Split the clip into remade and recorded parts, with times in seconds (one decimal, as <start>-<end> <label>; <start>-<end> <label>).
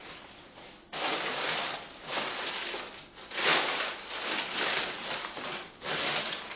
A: 0.0-6.6 recorded